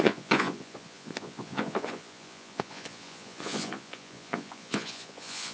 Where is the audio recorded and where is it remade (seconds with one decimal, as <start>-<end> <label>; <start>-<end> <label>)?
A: 0.0-5.5 remade